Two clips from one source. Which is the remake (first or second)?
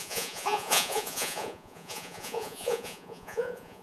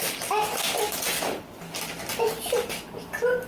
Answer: first